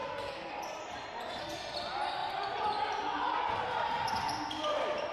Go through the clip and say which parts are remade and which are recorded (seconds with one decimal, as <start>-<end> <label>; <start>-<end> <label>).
0.0-0.5 remade; 0.5-5.1 recorded